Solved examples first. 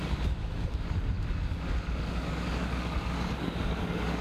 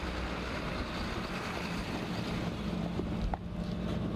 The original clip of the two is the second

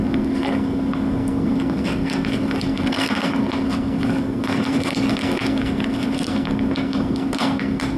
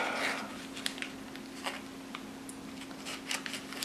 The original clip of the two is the second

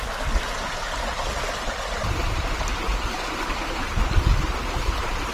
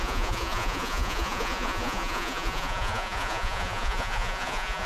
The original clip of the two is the first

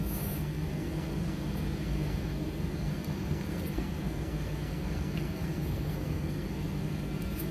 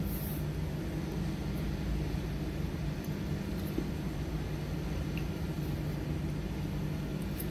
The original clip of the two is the second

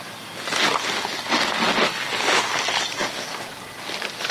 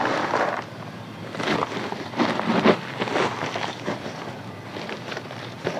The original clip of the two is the first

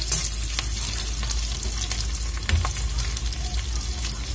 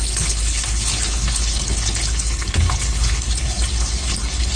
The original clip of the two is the first